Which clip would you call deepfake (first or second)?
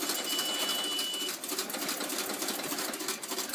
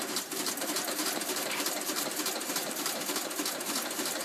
second